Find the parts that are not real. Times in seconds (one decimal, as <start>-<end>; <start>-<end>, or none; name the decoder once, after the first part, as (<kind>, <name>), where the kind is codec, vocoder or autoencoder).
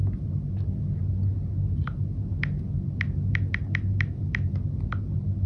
none